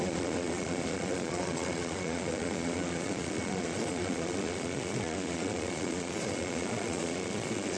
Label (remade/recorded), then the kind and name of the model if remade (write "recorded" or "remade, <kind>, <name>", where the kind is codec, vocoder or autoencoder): remade, vocoder, Vocos